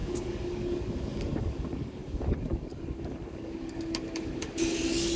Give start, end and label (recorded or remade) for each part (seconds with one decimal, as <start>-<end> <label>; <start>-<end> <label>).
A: 0.0-5.2 remade